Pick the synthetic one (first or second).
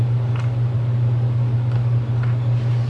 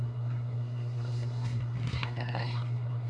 second